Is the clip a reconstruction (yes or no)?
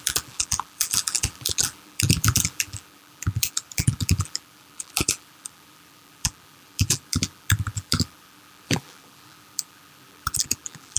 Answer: yes